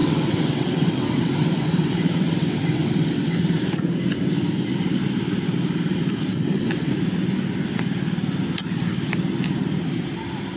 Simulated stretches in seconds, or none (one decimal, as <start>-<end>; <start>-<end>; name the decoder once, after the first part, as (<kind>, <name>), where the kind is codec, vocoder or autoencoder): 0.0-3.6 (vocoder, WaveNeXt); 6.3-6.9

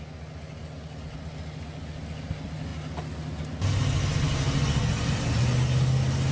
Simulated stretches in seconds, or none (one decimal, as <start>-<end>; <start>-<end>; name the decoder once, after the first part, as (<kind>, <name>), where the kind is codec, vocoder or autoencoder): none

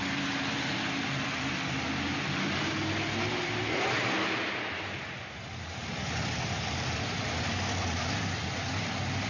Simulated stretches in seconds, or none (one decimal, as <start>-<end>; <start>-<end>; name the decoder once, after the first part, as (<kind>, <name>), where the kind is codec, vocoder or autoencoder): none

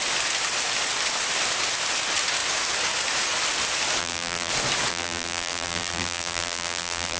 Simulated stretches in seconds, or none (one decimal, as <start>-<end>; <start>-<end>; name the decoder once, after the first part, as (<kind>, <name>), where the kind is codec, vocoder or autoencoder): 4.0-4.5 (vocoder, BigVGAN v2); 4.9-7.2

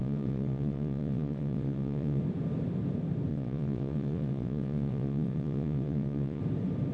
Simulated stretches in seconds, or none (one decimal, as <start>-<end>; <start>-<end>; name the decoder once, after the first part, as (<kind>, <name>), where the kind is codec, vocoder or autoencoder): 0.0-2.2 (vocoder, WaveNeXt); 3.3-6.4

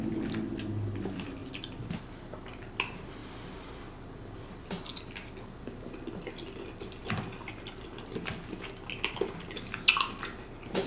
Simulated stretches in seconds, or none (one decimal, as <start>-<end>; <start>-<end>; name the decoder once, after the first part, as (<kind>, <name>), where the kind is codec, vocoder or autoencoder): none